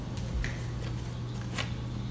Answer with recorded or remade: recorded